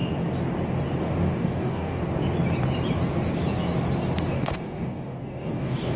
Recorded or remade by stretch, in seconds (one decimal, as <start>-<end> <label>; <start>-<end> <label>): 0.0-1.0 recorded; 1.0-2.0 remade; 2.0-4.3 recorded; 4.3-6.0 remade